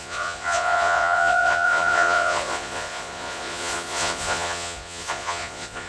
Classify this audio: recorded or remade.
remade